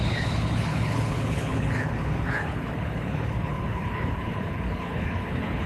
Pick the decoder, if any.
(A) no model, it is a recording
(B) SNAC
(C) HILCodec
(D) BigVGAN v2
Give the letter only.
C